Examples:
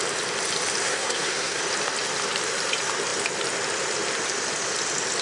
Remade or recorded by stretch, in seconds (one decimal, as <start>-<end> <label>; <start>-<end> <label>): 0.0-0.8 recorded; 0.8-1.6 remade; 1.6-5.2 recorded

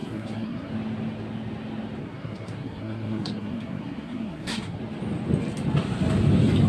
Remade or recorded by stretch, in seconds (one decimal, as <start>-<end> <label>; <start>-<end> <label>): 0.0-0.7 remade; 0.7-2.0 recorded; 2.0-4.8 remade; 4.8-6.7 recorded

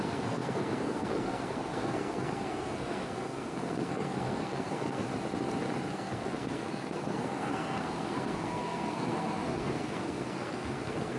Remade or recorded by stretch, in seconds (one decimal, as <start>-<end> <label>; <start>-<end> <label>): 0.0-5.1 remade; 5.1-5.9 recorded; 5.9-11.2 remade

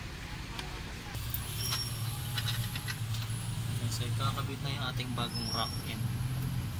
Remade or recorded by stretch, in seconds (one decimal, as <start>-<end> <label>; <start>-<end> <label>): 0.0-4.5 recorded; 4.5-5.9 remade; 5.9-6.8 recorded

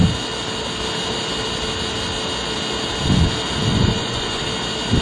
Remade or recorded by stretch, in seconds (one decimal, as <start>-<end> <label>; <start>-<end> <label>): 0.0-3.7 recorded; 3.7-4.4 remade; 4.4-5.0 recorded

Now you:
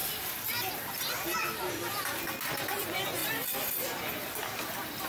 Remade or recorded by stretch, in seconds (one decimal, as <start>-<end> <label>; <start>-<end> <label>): 0.0-3.2 recorded; 3.2-5.1 remade